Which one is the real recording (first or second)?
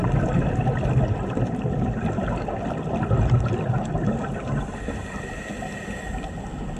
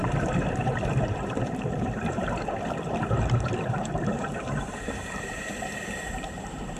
first